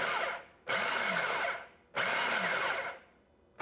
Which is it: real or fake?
real